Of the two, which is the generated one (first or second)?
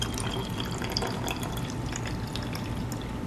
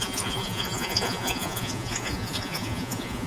second